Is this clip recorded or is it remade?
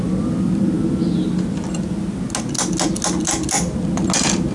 recorded